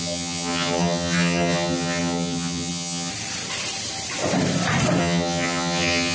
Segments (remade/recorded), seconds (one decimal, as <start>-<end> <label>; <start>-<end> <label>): 0.0-3.1 remade; 3.1-5.0 recorded; 5.0-6.1 remade